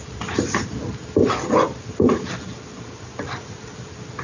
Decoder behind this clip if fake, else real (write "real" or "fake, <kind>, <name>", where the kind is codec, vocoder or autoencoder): real